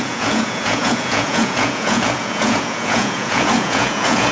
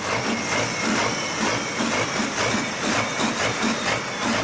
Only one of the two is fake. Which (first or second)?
first